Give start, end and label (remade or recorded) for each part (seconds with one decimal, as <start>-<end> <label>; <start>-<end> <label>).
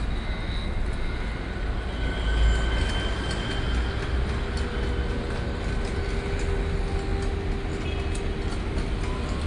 0.0-9.5 recorded